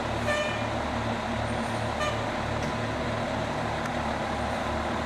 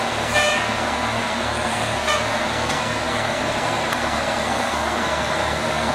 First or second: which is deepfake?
second